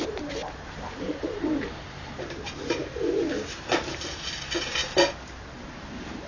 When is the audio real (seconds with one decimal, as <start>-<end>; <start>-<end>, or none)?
4.8-5.6

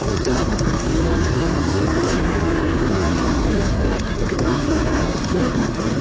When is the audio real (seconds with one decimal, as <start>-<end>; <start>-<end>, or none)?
none

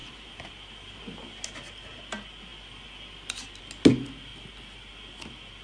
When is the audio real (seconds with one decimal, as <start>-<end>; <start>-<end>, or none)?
1.0-5.6

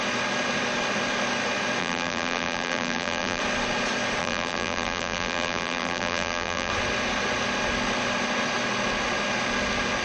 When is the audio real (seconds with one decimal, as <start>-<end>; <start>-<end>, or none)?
0.0-1.8; 3.4-4.2; 6.7-10.0